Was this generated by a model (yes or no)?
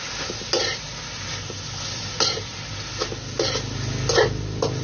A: no